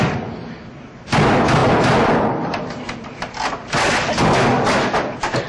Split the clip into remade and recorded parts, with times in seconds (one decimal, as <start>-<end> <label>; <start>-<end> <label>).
0.0-5.5 recorded